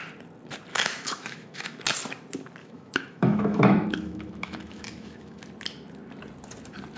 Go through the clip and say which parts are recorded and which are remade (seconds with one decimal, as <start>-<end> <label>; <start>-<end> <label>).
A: 0.0-0.7 recorded; 0.7-1.8 remade; 1.8-2.6 recorded; 2.6-5.4 remade; 5.4-7.0 recorded

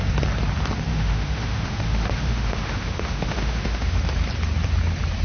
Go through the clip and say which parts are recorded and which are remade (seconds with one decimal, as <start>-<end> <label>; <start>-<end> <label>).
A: 0.0-0.9 recorded; 0.9-4.0 remade; 4.0-5.2 recorded